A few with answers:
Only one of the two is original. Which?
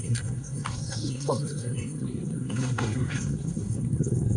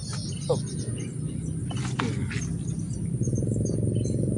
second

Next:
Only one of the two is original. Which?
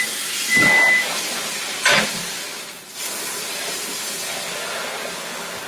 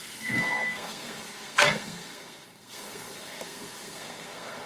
first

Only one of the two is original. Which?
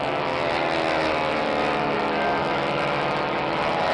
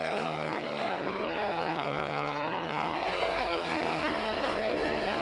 first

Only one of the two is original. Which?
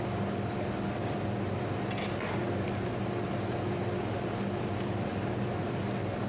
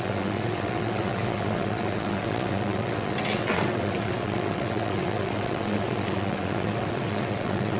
first